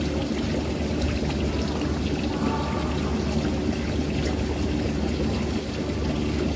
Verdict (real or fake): real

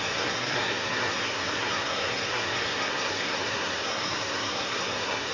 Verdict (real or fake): fake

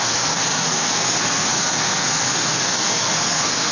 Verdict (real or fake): fake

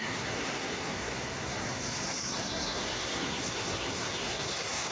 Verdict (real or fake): fake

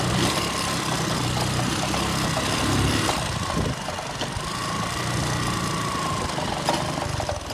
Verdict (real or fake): real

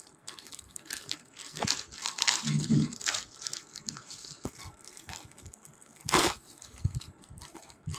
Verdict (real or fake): fake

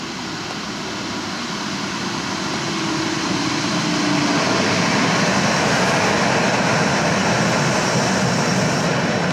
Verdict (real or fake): real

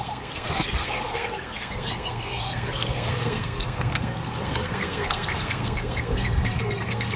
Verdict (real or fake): fake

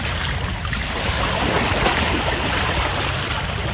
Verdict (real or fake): real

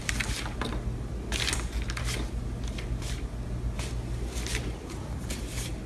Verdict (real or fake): real